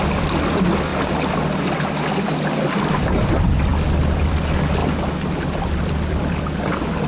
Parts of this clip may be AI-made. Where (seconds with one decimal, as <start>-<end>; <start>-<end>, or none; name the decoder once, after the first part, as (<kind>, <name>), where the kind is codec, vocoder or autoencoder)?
0.0-0.9 (vocoder, BigVGAN v2); 2.8-3.7; 4.2-4.8; 5.6-7.1